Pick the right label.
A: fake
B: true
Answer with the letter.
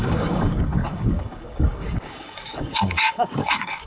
A